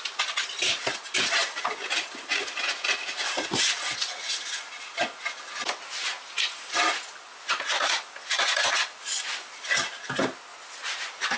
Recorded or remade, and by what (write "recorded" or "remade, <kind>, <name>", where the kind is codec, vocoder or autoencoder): recorded